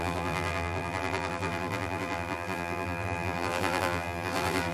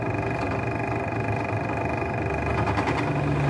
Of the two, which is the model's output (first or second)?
first